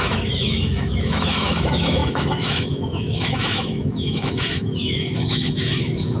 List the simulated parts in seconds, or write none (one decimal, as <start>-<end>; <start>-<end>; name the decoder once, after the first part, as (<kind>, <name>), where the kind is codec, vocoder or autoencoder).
0.0-6.2 (autoencoder, DAC-VAE)

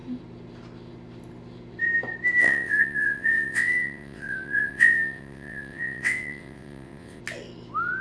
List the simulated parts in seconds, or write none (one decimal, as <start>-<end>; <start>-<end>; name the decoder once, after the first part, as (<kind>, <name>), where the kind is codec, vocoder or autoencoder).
2.4-7.2 (vocoder, WaveNeXt)